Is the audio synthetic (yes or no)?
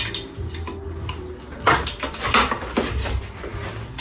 no